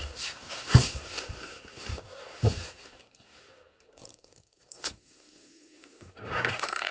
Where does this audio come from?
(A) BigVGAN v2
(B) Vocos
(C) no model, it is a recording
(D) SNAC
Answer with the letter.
D